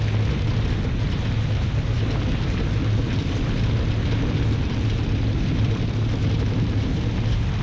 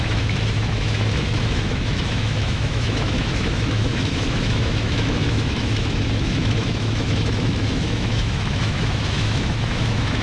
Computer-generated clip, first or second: second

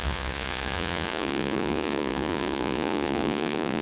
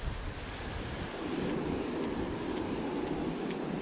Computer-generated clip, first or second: first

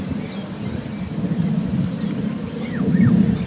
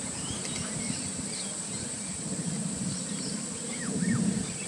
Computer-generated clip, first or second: second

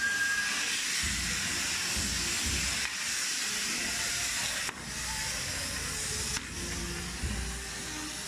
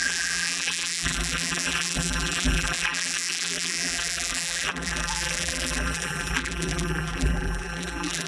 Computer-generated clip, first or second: second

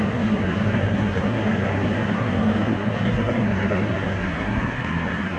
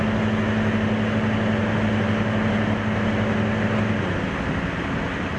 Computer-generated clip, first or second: first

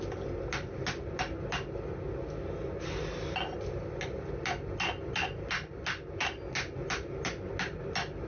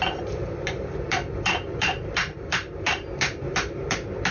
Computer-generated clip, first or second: second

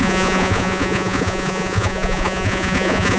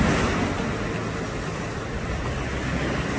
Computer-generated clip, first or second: first